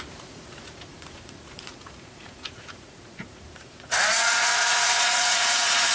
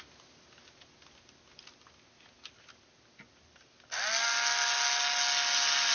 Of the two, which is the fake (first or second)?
first